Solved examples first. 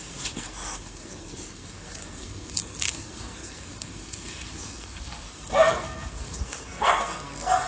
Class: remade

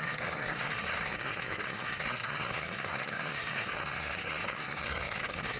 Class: remade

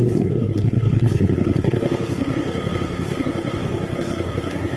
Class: remade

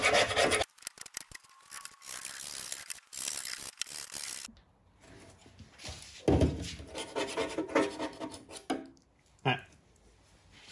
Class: recorded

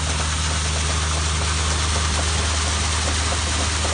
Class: recorded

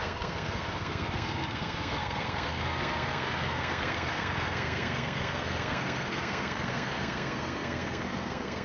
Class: remade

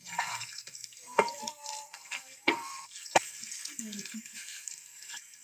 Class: remade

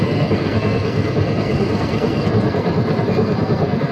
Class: remade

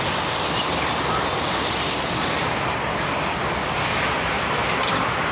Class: recorded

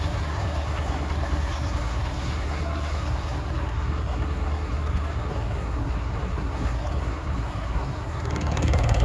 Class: remade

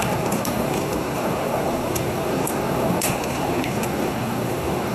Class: remade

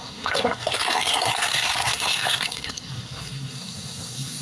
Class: remade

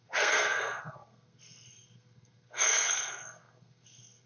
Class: remade